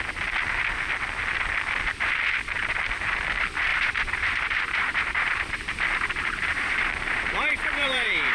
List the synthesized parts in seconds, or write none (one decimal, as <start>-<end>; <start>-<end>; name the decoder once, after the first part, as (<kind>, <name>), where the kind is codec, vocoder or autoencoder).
3.7-8.3 (vocoder, BigVGAN v2)